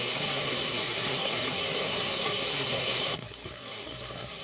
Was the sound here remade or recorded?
remade